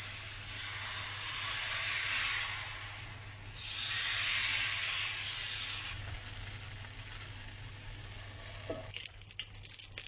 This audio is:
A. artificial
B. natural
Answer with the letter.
B